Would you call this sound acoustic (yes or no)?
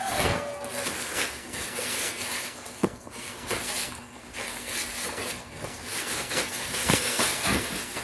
no